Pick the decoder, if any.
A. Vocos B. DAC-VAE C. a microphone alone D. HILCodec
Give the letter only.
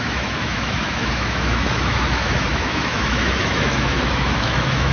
B